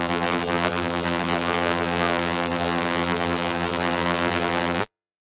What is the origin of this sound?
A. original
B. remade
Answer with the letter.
B